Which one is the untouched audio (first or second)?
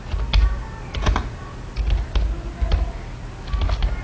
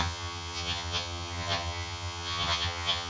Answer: first